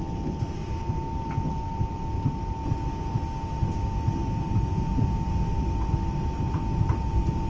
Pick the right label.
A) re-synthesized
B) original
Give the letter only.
B